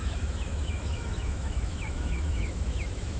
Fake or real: fake